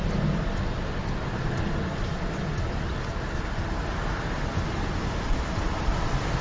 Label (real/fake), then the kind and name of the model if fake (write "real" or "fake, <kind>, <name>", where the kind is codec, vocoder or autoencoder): real